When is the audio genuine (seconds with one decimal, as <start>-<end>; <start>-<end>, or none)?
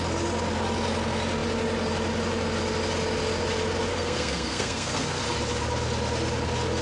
0.0-3.9; 5.2-6.8